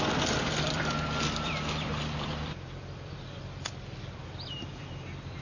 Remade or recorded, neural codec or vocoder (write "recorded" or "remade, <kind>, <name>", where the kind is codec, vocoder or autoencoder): remade, vocoder, BigVGAN v2